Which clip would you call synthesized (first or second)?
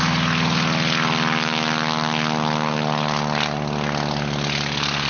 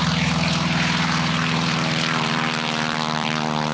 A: second